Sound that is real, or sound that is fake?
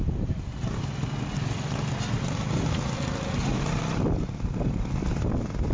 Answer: real